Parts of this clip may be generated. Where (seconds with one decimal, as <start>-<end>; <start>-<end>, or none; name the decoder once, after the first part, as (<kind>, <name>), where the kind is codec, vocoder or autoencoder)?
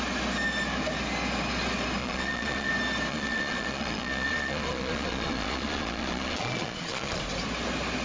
2.0-2.7 (vocoder, Vocos); 3.1-7.2